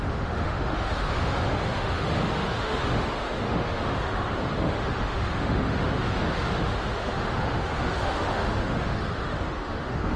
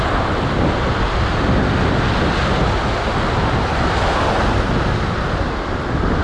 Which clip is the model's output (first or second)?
first